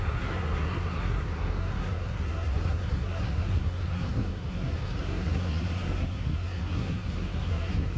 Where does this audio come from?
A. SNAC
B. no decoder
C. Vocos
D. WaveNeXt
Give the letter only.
A